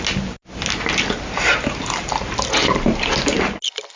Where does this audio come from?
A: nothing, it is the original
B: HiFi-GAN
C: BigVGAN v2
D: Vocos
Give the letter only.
A